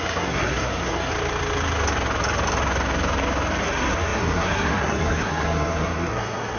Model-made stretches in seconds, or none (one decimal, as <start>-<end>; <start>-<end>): 0.0-1.1; 3.6-6.6